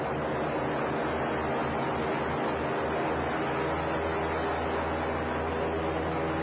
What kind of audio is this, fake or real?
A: real